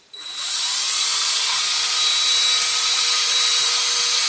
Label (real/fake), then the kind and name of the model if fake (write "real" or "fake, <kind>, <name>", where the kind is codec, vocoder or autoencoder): real